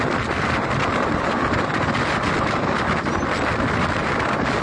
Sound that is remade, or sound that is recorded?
recorded